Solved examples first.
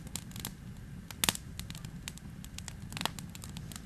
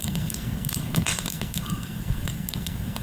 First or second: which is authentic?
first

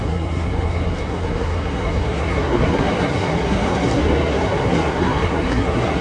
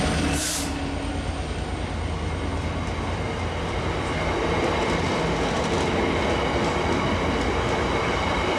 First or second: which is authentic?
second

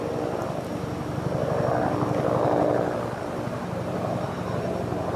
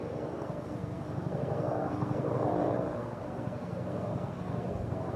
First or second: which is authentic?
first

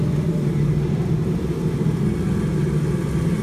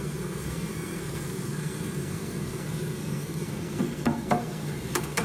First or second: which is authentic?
first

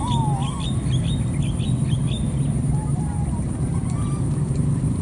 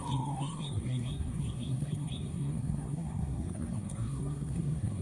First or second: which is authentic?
first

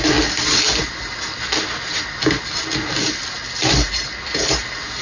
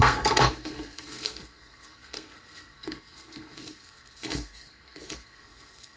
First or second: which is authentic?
first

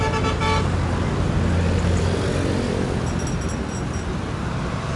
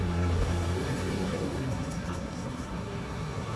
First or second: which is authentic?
first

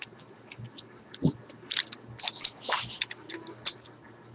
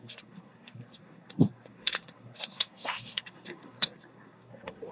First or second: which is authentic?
first